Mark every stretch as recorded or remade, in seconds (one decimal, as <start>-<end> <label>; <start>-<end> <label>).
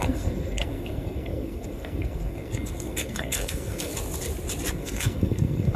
0.0-3.9 remade; 3.9-4.7 recorded; 4.7-5.8 remade